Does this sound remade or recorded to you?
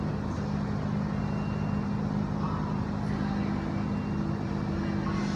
recorded